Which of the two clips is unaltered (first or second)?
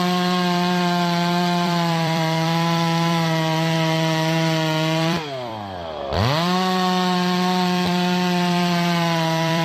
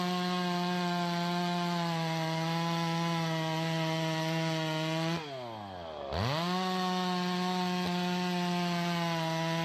second